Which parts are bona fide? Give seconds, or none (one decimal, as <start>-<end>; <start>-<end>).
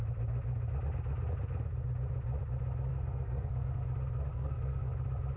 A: 0.0-2.9; 3.8-4.3; 4.9-5.4